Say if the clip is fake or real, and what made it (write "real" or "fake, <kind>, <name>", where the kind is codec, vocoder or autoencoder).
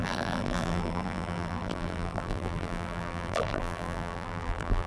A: fake, vocoder, BigVGAN v2